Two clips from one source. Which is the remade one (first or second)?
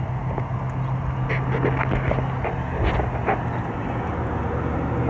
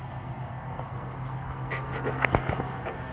second